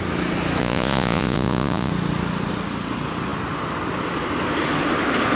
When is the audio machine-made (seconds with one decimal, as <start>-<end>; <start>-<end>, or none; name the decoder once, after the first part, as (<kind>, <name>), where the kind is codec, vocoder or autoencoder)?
0.6-1.9 (vocoder, Vocos)